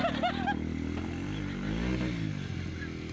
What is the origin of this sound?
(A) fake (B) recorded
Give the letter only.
B